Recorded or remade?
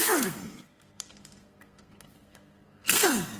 remade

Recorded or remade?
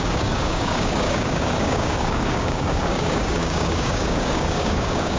remade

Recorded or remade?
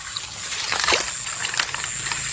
recorded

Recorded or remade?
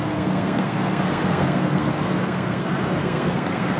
remade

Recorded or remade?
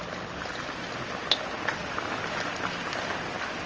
recorded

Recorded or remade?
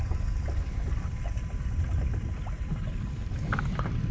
recorded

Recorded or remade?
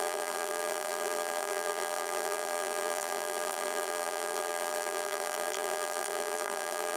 remade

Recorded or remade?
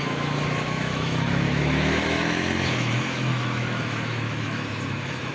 remade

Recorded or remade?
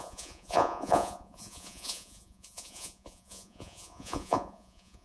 remade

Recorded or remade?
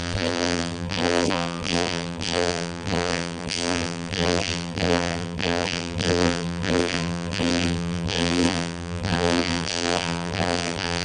remade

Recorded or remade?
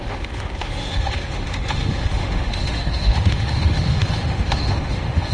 remade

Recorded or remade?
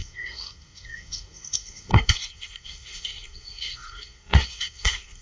remade